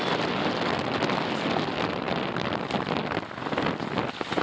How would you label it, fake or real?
fake